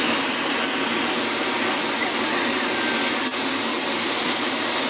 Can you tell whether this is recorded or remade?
recorded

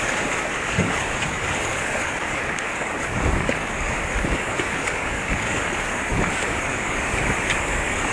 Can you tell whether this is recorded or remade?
remade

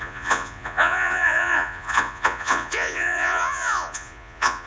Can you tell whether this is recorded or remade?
remade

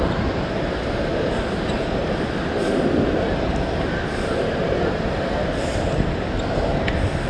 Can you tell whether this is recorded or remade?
recorded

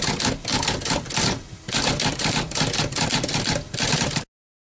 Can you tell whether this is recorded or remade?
recorded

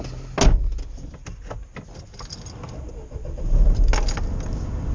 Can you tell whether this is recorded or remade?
recorded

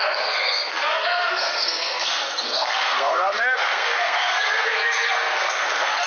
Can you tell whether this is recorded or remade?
remade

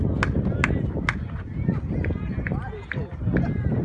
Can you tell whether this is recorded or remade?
recorded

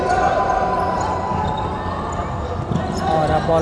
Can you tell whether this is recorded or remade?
recorded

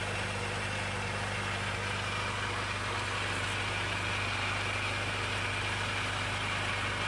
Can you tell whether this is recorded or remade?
recorded